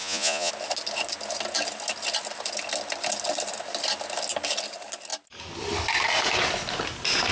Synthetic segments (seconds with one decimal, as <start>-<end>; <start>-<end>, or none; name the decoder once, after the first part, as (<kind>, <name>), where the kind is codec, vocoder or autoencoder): 0.0-0.5 (vocoder, Vocos)

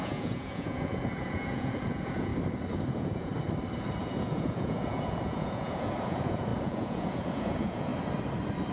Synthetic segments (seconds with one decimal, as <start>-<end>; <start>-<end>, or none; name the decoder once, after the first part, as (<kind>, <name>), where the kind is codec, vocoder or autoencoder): 0.0-2.3 (vocoder, Vocos); 2.9-3.3; 4.0-7.9

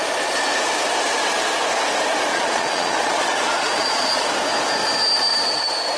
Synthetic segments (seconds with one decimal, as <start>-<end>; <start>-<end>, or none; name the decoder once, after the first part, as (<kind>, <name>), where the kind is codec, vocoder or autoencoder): 2.3-4.3 (vocoder, Vocos)

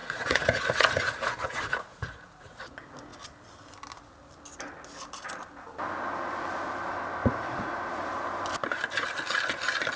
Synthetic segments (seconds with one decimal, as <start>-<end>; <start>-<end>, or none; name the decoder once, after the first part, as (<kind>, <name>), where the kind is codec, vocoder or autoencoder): 0.0-2.6 (vocoder, Vocos); 7.2-7.7

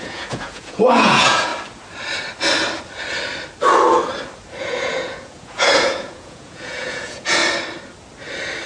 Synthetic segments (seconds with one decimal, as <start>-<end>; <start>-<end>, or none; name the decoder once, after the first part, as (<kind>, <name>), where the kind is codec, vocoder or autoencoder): 0.0-1.5 (vocoder, Vocos); 4.6-7.4